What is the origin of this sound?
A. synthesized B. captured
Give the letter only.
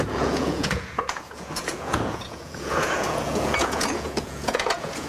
A